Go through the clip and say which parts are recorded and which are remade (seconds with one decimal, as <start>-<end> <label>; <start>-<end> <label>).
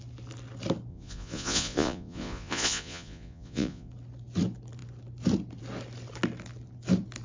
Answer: 0.0-0.9 recorded; 0.9-3.9 remade; 3.9-7.2 recorded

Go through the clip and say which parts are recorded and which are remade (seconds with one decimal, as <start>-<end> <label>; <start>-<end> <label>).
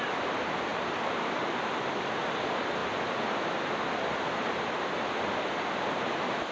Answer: 0.0-6.5 recorded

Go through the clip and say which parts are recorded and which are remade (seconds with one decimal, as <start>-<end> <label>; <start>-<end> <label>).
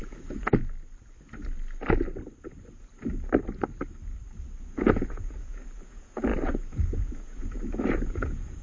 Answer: 0.0-0.6 remade; 0.6-4.6 recorded; 4.6-8.6 remade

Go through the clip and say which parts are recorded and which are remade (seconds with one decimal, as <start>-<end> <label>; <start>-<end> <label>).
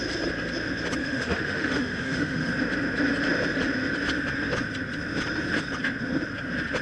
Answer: 0.0-1.0 recorded; 1.0-2.5 remade; 2.5-6.8 recorded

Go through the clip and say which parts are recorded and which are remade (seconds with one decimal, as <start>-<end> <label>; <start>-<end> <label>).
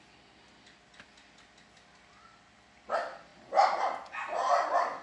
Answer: 0.0-5.0 recorded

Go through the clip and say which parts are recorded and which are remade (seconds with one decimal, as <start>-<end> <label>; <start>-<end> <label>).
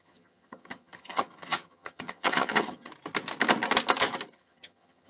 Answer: 0.0-2.9 remade; 2.9-4.3 recorded; 4.3-5.1 remade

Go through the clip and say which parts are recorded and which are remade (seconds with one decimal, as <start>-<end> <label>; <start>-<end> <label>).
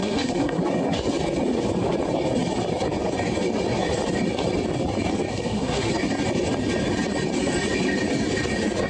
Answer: 0.0-0.6 remade; 0.6-5.3 recorded; 5.3-5.9 remade; 5.9-8.9 recorded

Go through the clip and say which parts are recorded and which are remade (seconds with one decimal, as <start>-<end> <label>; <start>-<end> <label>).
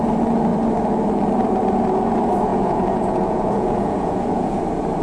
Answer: 0.0-2.5 recorded; 2.5-4.6 remade; 4.6-5.0 recorded